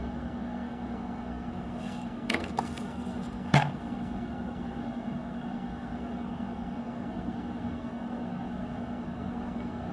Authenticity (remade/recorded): remade